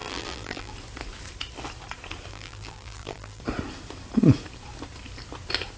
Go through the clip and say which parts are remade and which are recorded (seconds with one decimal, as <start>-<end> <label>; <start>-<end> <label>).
0.0-0.7 remade; 0.7-2.3 recorded; 2.3-3.4 remade; 3.4-5.8 recorded